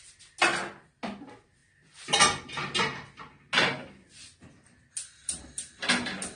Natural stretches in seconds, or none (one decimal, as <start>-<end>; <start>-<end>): 0.0-6.4